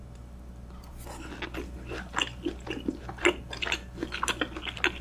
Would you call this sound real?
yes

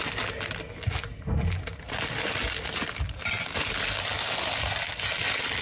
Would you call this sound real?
yes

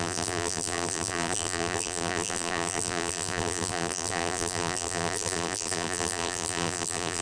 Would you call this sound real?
no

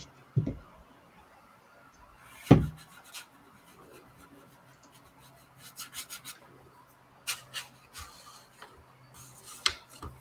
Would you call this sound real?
yes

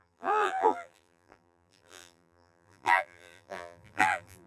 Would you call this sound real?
no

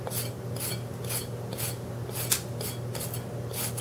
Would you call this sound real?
yes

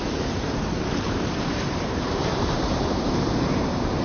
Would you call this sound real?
no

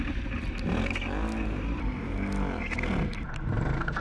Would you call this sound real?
yes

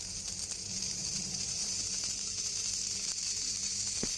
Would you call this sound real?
no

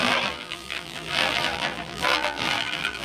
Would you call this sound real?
no